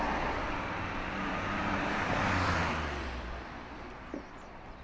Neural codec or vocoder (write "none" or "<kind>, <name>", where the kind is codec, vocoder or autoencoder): vocoder, BigVGAN v2